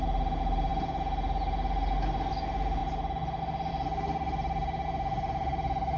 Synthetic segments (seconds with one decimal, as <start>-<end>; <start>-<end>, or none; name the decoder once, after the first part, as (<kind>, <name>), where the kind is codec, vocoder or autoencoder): none